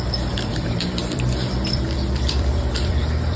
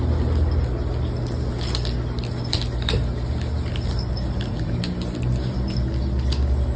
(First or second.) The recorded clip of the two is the second